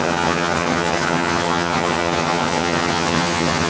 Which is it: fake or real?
fake